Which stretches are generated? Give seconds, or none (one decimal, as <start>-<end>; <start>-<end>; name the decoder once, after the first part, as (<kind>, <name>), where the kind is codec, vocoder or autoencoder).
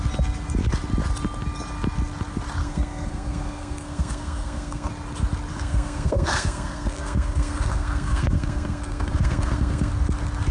2.6-4.9 (codec, SNAC); 5.5-9.9